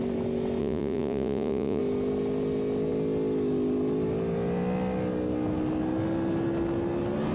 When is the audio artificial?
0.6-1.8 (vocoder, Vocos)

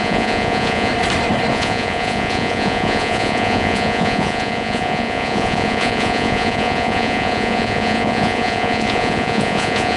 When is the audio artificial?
0.0-0.9 (vocoder, Vocos); 1.5-10.0

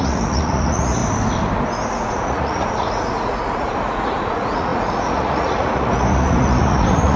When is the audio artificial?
0.0-1.0 (vocoder, Vocos); 1.9-7.2